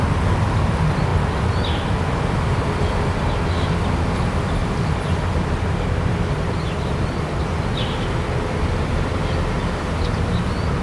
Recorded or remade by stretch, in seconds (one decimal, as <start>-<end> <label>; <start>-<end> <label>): 0.0-1.1 recorded; 1.1-1.7 remade; 1.7-2.5 recorded; 2.5-3.2 remade; 3.2-4.6 recorded; 4.6-7.4 remade; 7.4-10.8 recorded